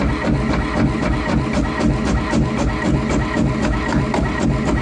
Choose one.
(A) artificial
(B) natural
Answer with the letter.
B